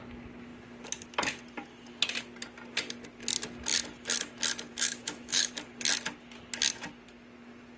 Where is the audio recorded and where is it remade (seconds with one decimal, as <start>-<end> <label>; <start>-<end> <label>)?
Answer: 0.0-4.7 recorded; 4.7-5.5 remade; 5.5-7.8 recorded

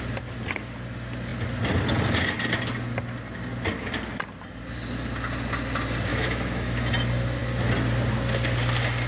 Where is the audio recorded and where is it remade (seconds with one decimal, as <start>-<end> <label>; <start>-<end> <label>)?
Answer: 0.0-6.1 recorded; 6.1-6.9 remade; 6.9-9.1 recorded

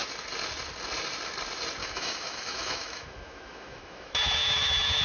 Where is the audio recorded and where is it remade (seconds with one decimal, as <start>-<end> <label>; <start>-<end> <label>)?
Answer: 0.0-1.8 recorded; 1.8-5.0 remade